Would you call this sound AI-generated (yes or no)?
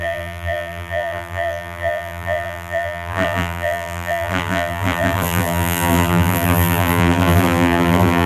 yes